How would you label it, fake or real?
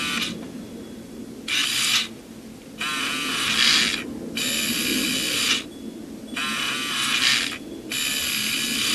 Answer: real